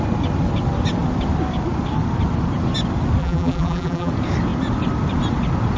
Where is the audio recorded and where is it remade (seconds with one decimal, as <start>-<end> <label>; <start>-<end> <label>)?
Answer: 0.0-3.2 recorded; 3.2-4.1 remade; 4.1-5.8 recorded